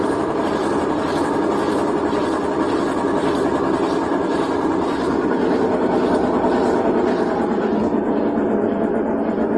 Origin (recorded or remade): recorded